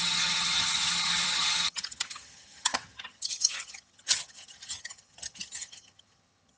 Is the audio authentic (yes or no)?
no